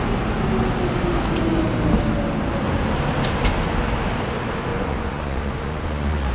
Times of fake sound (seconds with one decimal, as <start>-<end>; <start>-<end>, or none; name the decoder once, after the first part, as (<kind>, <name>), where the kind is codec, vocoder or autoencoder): 4.7-6.3 (vocoder, Vocos)